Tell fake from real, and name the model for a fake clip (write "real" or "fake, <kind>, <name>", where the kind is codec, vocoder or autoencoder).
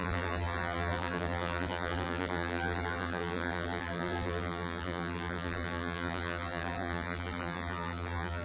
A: fake, vocoder, BigVGAN v2